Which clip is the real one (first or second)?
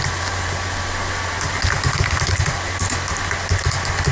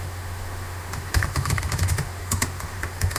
first